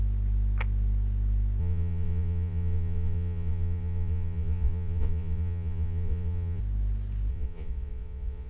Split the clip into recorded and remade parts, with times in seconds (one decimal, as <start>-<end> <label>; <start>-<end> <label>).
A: 0.0-1.6 recorded; 1.6-6.6 remade; 6.6-7.3 recorded; 7.3-8.5 remade